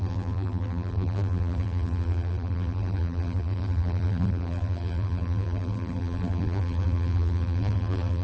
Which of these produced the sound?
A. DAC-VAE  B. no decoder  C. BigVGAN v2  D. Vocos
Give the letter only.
C